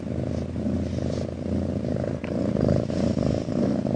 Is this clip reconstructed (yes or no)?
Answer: no